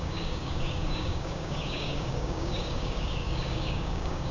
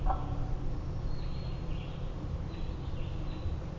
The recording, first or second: second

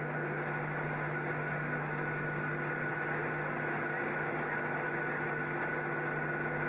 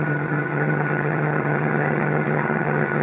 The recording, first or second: first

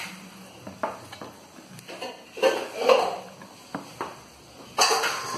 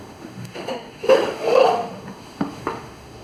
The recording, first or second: first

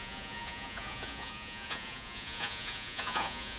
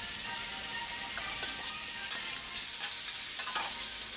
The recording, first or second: second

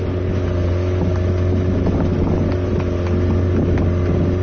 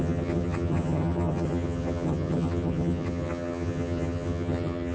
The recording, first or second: first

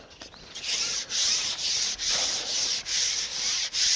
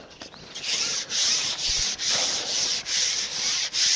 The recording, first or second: first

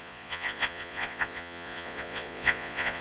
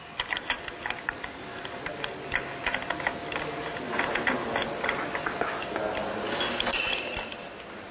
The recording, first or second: second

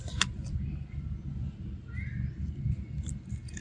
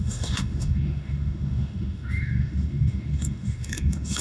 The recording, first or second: first